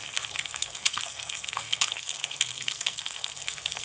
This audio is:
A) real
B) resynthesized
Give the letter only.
B